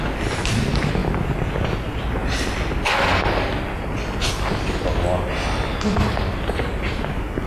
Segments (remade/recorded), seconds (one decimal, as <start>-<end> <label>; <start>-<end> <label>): 0.0-7.5 recorded

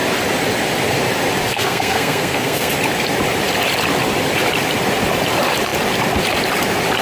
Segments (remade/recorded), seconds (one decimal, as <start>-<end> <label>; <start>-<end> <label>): 0.0-1.5 recorded; 1.5-2.7 remade; 2.7-7.0 recorded